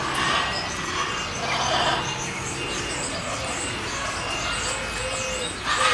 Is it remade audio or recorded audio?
recorded